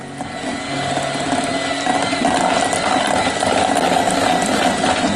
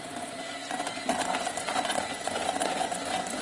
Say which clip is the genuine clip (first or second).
first